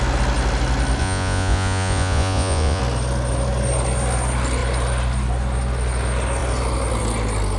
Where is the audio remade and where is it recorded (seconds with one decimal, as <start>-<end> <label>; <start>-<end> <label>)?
0.0-1.0 recorded; 1.0-2.8 remade; 2.8-7.6 recorded